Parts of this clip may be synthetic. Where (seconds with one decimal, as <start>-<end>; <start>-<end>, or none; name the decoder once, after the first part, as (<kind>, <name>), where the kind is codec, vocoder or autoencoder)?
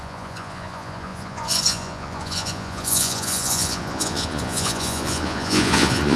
0.0-6.2 (vocoder, Vocos)